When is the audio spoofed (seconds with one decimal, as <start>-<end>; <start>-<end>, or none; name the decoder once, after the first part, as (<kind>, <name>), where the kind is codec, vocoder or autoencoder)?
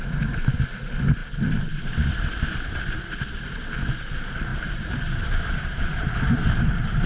4.5-7.1 (vocoder, BigVGAN v2)